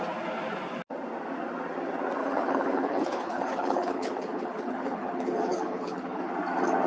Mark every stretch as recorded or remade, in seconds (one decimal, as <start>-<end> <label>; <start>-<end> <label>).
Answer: 0.0-2.2 recorded; 2.2-6.3 remade; 6.3-6.9 recorded